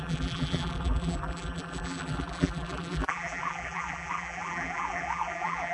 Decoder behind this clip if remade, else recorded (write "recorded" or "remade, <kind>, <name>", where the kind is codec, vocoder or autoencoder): remade, vocoder, BigVGAN v2